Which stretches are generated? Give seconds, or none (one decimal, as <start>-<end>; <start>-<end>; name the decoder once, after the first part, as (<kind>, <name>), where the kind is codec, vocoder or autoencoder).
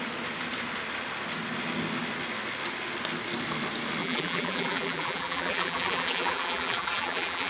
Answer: 4.0-7.5 (vocoder, BigVGAN v2)